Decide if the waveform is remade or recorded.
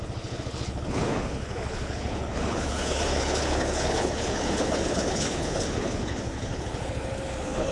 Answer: remade